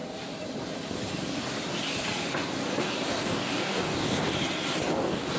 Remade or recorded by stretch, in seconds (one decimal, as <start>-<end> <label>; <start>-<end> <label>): 0.0-3.2 recorded; 3.2-4.3 remade; 4.3-4.9 recorded; 4.9-5.4 remade